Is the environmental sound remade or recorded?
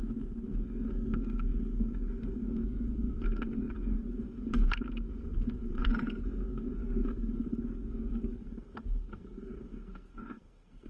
remade